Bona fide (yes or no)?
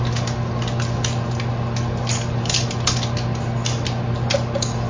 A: yes